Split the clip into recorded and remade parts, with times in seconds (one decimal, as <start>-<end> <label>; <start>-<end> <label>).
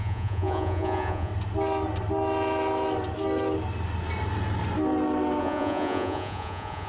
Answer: 0.0-1.3 remade; 1.3-5.4 recorded; 5.4-6.9 remade